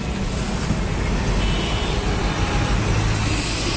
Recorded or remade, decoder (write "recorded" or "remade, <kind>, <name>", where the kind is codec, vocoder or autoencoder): recorded